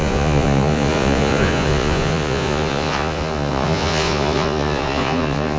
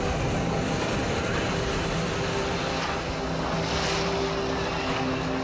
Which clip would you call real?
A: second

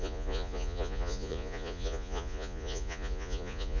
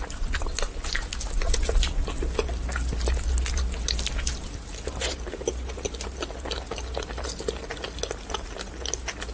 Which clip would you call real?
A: second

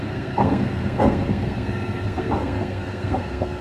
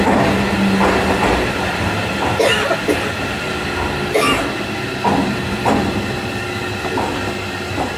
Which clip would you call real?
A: second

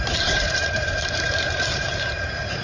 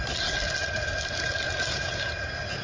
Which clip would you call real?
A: second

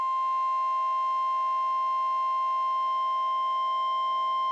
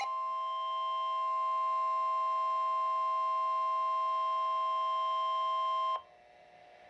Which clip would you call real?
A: second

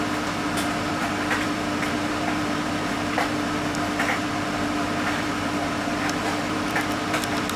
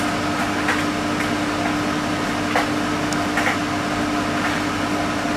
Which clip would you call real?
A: second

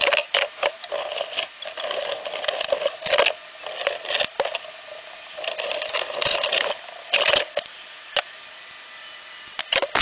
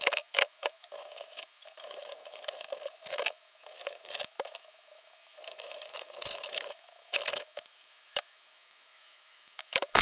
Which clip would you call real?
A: first